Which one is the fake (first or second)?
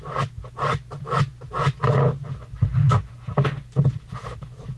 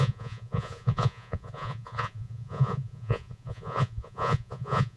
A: second